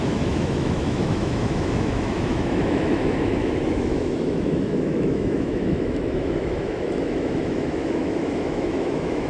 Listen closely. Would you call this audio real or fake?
fake